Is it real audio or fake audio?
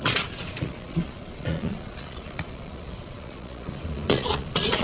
fake